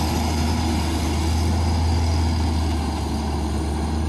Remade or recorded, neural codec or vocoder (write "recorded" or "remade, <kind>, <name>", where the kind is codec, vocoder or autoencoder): recorded